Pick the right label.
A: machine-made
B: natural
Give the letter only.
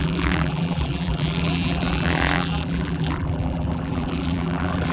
A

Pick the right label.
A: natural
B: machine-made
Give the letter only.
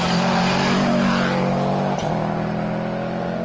A